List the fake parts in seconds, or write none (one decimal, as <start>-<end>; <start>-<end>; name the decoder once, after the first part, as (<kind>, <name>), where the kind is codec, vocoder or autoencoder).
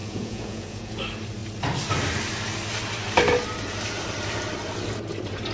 0.0-0.9 (vocoder, Vocos)